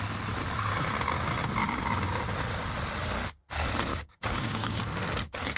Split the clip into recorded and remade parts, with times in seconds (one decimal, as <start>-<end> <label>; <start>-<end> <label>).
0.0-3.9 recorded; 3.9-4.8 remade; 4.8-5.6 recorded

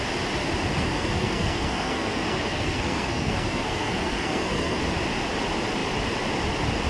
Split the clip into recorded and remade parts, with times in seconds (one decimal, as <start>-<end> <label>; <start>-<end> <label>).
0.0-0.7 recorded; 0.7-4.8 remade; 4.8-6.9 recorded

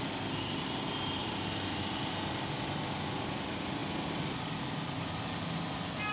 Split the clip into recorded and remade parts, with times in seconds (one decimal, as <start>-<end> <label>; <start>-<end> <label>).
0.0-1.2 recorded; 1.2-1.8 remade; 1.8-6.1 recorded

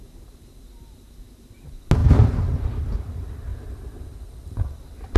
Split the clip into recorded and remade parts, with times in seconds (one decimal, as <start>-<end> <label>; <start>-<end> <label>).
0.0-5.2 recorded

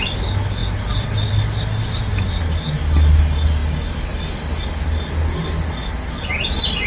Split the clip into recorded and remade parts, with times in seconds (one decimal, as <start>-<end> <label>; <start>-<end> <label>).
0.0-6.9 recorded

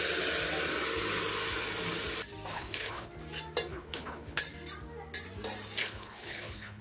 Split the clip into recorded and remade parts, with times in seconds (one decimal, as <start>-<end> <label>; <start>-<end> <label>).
0.0-2.5 recorded; 2.5-3.1 remade; 3.1-3.7 recorded; 3.7-4.4 remade; 4.4-5.8 recorded; 5.8-6.8 remade

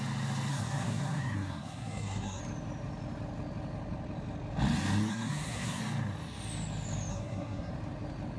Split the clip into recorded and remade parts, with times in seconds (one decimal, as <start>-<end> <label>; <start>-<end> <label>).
0.0-0.5 recorded; 0.5-2.4 remade; 2.4-5.1 recorded; 5.1-5.8 remade; 5.8-7.1 recorded; 7.1-7.7 remade; 7.7-8.4 recorded

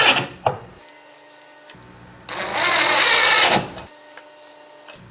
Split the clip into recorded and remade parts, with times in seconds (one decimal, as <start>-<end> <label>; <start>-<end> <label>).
0.0-5.1 recorded